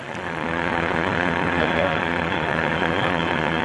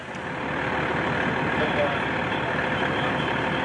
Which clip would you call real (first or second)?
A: second